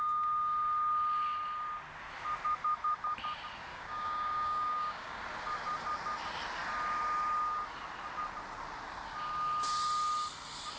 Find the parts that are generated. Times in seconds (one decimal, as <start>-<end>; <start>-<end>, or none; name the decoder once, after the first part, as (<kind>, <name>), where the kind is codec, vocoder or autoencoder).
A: 3.7-5.2 (codec, DAC)